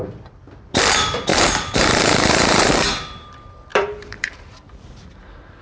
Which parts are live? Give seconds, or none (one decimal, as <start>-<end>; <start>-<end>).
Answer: 0.0-1.3; 3.3-3.7; 4.4-5.6